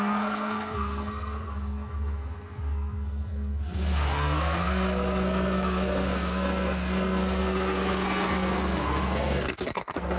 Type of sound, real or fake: fake